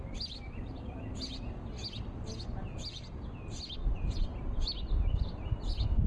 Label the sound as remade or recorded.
recorded